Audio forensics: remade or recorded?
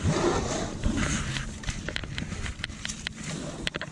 recorded